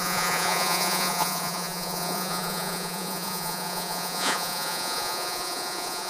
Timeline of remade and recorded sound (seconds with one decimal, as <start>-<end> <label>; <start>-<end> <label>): 0.0-6.1 remade